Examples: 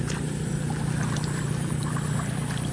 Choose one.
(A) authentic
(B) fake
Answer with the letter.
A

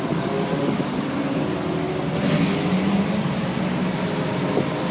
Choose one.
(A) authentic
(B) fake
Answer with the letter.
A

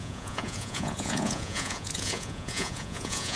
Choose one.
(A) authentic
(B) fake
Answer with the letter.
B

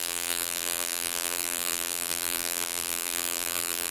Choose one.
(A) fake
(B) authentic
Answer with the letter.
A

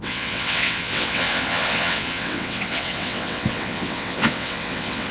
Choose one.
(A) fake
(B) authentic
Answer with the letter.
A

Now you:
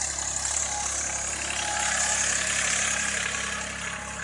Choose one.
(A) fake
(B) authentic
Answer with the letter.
B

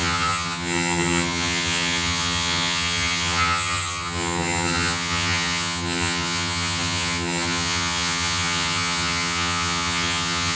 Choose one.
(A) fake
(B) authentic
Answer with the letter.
A